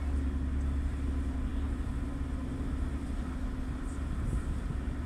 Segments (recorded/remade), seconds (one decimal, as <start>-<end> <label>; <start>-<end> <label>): 0.0-5.1 recorded